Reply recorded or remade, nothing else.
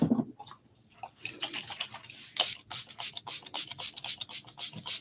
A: recorded